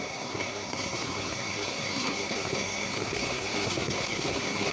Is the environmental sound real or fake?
fake